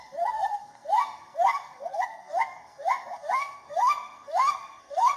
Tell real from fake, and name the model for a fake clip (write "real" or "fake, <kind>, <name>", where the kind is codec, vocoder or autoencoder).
fake, codec, SNAC